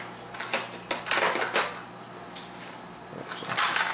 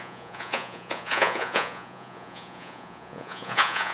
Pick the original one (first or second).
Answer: first